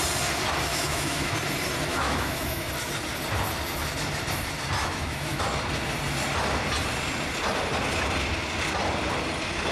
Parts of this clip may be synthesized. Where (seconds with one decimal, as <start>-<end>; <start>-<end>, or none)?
0.7-1.3; 1.9-2.7; 4.8-5.4